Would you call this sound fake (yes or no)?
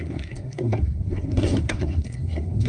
yes